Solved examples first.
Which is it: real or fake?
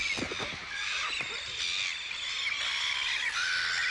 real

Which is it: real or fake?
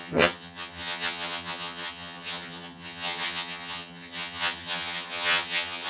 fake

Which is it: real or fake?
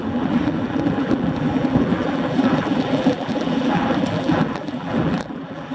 fake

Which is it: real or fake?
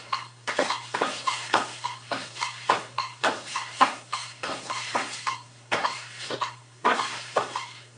fake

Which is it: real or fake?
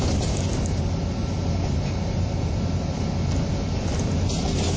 real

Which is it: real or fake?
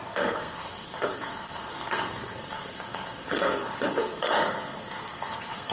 fake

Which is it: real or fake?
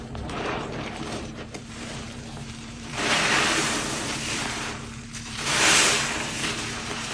fake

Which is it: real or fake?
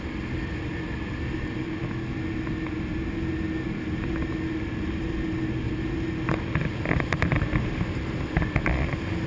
real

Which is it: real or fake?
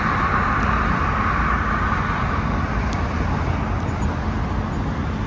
real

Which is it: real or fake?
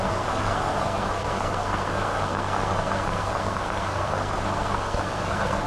fake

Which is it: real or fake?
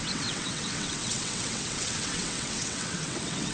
fake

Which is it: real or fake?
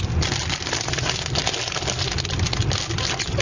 real